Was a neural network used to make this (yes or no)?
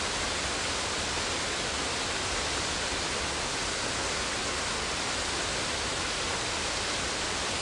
no